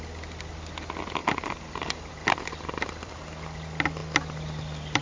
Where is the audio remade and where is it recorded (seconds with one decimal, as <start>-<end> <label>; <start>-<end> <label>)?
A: 0.0-1.2 recorded; 1.2-3.1 remade; 3.1-5.0 recorded